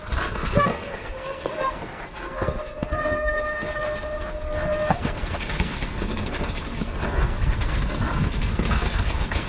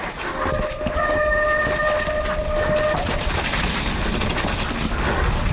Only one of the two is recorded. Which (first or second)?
second